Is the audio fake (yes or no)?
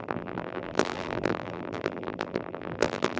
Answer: yes